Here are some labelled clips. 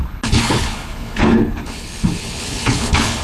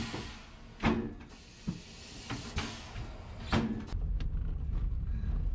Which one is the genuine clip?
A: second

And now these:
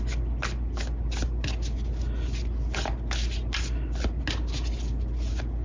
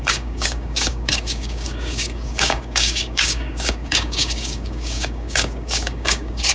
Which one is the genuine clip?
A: first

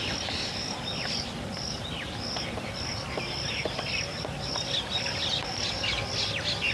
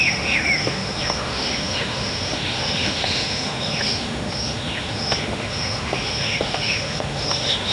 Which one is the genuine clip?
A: first